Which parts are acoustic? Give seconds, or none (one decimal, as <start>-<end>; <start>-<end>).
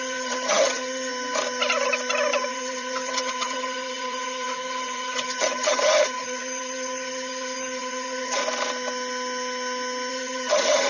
1.1-2.5; 8.4-10.1